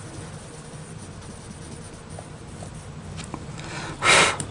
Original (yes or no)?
yes